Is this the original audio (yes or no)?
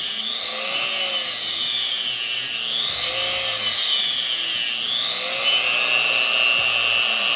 yes